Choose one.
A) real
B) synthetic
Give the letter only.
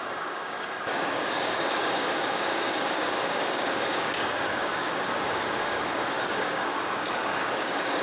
B